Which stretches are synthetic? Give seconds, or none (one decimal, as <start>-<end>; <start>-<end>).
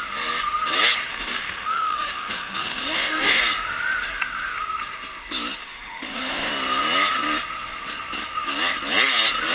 1.1-3.4; 5.6-6.5